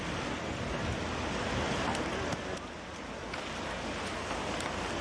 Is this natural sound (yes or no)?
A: yes